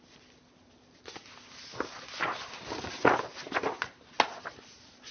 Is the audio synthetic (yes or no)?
no